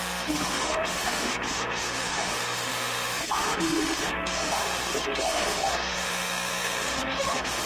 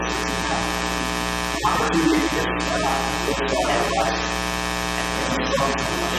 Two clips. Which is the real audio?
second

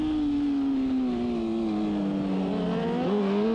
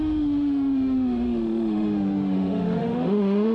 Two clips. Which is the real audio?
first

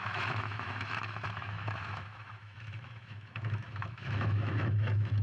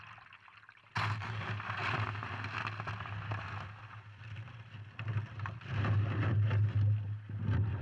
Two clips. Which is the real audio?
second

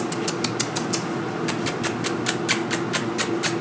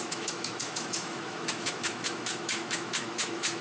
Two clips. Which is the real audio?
first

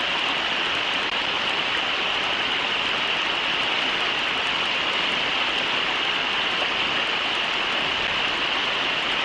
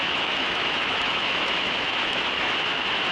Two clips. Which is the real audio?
first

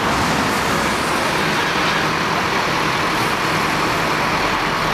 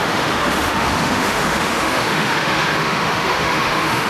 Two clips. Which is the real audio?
first